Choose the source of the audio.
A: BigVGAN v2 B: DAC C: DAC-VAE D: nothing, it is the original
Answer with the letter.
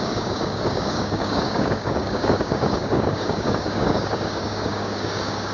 B